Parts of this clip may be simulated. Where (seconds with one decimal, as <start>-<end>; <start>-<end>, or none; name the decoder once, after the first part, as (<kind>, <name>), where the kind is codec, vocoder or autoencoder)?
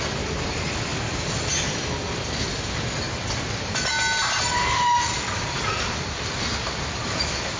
none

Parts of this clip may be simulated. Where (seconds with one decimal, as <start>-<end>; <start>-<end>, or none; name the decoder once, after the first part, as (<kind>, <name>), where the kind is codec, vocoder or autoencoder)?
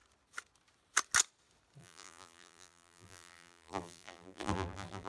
1.8-5.1 (vocoder, BigVGAN v2)